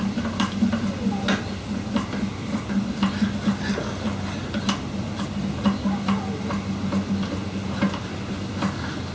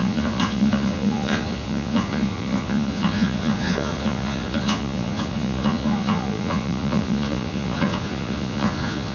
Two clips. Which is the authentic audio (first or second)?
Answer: first